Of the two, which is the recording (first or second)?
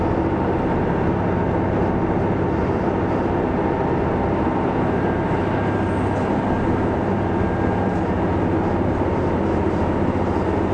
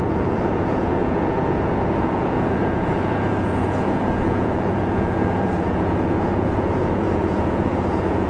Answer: first